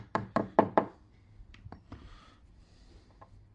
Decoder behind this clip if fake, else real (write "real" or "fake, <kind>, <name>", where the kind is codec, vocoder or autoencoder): fake, vocoder, BigVGAN v2